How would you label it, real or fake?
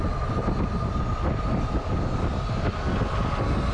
real